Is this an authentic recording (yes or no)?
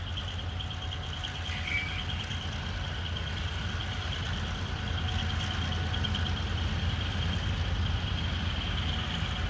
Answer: yes